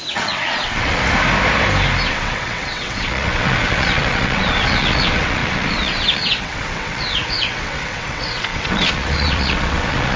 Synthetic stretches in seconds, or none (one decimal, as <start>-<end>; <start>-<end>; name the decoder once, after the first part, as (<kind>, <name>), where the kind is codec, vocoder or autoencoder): 0.0-1.0 (vocoder, WaveNeXt); 2.1-10.2